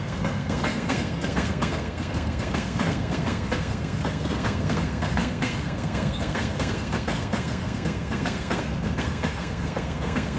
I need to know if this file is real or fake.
fake